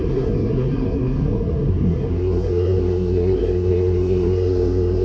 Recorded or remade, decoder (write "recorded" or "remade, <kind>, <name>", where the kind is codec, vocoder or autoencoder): remade, codec, SNAC